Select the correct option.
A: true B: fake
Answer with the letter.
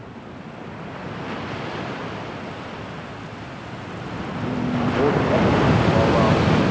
A